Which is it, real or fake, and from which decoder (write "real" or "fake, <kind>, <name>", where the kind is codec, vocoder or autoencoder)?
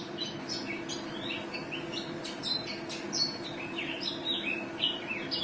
real